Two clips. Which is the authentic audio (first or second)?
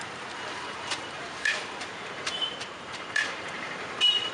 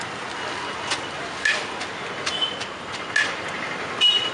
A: second